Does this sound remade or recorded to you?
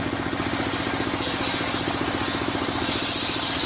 recorded